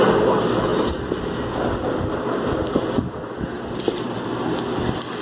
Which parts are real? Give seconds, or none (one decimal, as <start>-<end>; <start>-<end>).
0.0-5.2

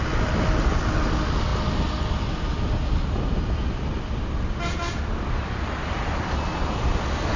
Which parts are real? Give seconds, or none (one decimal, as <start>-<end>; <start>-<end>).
0.0-7.4

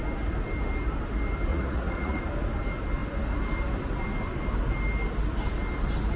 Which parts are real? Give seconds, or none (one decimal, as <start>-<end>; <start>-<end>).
0.0-1.5; 2.2-6.2

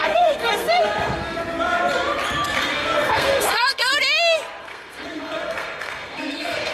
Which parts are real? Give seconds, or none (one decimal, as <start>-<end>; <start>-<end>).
1.4-2.6; 3.9-4.6

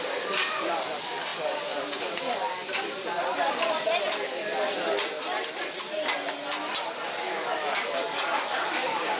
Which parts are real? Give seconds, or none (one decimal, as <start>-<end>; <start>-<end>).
2.6-7.1

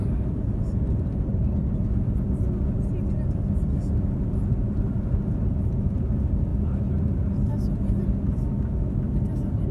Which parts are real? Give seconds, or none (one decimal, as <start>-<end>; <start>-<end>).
1.3-4.8; 6.5-9.7

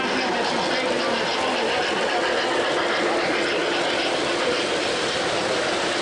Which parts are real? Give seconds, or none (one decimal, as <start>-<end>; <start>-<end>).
0.0-6.0

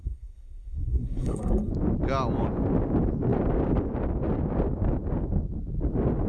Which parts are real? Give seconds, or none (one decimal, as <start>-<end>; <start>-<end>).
1.7-6.3